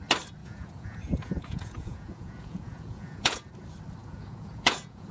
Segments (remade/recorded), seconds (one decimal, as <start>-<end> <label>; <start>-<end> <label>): 0.0-0.4 recorded; 0.4-3.5 remade; 3.5-4.0 recorded; 4.0-5.1 remade